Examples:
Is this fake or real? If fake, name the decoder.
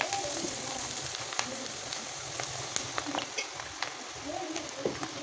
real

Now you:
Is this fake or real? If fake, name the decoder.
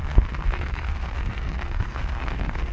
fake, codec, SNAC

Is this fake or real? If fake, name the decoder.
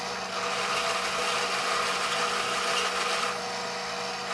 real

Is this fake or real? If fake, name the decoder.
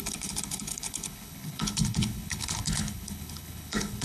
fake, codec, HILCodec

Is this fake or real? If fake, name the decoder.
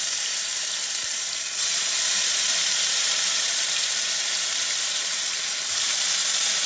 fake, vocoder, BigVGAN v2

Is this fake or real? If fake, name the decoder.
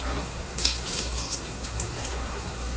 fake, codec, SNAC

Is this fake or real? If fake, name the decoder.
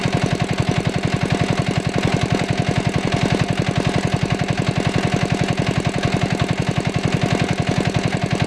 real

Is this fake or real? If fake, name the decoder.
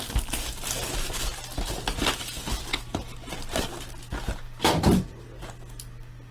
real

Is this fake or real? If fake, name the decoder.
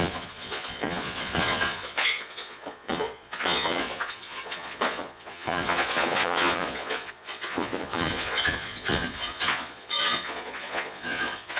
fake, vocoder, Vocos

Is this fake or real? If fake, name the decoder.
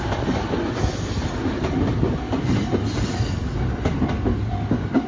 real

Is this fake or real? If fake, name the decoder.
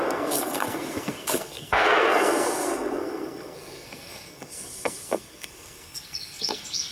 fake, codec, SNAC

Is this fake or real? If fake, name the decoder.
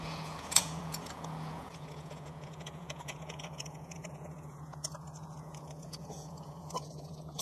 fake, vocoder, Vocos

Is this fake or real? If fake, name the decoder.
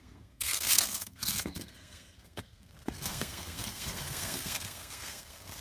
fake, codec, SNAC